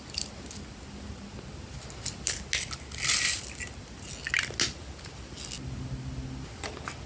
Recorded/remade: recorded